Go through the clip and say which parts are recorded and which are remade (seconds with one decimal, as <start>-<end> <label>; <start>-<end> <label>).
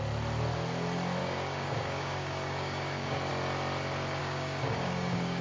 0.0-1.2 recorded; 1.2-3.3 remade; 3.3-4.2 recorded; 4.2-5.4 remade